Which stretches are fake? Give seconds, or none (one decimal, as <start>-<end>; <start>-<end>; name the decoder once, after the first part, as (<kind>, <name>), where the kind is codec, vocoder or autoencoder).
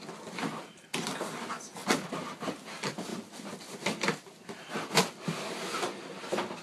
none